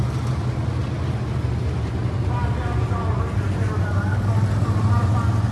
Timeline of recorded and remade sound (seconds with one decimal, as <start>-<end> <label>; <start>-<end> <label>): 0.0-5.5 recorded

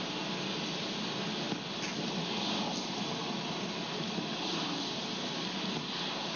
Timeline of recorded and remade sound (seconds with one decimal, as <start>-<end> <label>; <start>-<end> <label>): 0.0-3.2 recorded; 3.2-6.4 remade

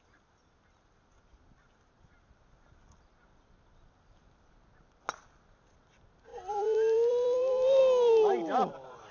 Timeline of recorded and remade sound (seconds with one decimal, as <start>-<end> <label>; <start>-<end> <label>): 0.0-6.3 recorded; 6.3-7.8 remade; 7.8-9.1 recorded